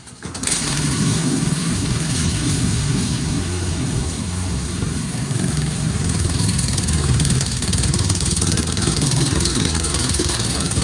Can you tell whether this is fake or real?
fake